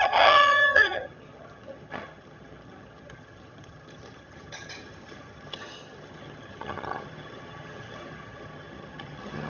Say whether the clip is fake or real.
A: fake